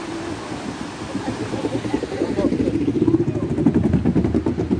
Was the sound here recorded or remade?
recorded